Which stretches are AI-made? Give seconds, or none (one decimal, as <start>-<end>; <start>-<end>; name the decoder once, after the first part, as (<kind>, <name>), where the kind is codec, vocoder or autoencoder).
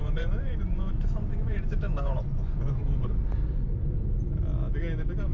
0.0-3.1 (vocoder, Vocos)